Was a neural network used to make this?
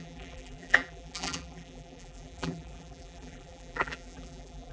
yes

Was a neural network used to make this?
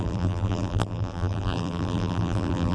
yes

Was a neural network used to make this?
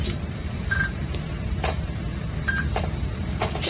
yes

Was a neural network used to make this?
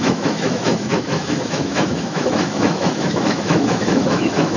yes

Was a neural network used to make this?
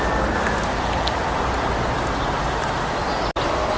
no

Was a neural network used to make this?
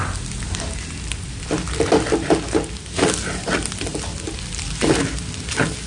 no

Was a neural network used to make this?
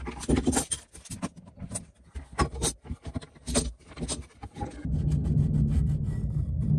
no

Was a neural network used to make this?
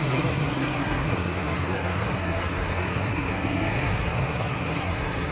yes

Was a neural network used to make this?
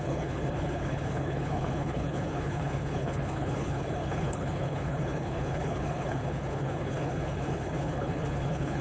yes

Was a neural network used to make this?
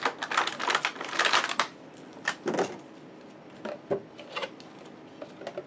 no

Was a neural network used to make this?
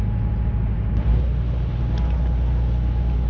no